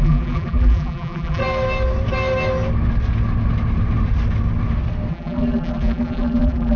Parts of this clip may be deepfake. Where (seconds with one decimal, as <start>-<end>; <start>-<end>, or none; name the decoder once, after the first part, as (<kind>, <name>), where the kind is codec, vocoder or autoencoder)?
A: 0.0-1.4 (vocoder, BigVGAN v2); 5.1-6.8